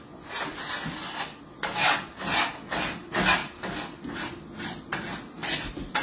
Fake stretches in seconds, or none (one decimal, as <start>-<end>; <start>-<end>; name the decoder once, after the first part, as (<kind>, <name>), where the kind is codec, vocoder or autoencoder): none